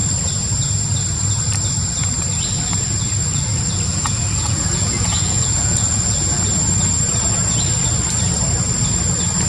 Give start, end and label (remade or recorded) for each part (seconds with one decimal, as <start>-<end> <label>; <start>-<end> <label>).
0.0-3.9 recorded; 3.9-6.4 remade; 6.4-9.5 recorded